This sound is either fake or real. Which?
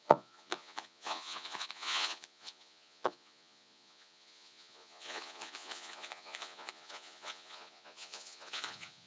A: fake